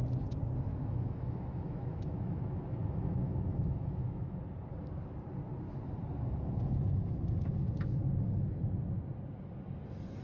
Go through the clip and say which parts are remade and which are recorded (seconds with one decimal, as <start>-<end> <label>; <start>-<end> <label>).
0.0-0.7 recorded; 0.7-4.4 remade; 4.4-10.2 recorded